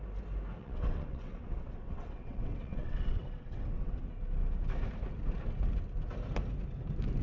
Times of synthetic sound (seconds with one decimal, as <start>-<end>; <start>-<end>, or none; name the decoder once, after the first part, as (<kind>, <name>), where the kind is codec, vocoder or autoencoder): 0.6-4.0 (vocoder, WaveNeXt)